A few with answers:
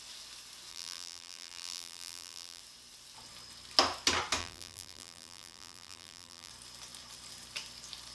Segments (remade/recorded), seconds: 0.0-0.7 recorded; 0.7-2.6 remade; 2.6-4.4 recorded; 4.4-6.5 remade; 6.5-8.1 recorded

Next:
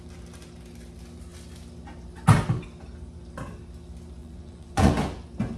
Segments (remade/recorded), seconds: 0.0-4.2 recorded; 4.2-4.9 remade; 4.9-5.6 recorded